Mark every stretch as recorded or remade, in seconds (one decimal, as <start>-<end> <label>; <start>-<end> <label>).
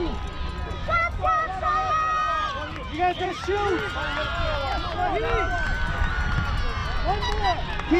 0.0-0.8 recorded; 0.8-1.9 remade; 1.9-2.7 recorded; 2.7-3.3 remade; 3.3-8.0 recorded